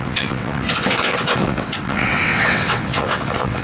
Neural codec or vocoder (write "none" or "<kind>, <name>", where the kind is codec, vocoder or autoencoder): vocoder, WaveNeXt